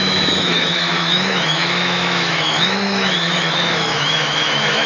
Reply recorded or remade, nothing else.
remade